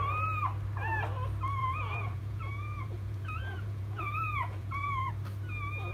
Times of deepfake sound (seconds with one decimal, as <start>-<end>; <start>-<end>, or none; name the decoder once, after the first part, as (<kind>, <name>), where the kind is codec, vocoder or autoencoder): 1.6-5.1 (vocoder, Vocos)